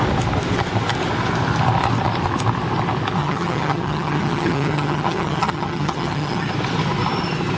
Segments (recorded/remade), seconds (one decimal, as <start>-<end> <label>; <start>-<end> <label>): 0.0-3.2 recorded; 3.2-6.5 remade; 6.5-7.6 recorded